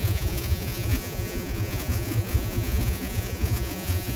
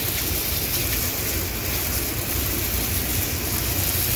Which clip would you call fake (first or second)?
first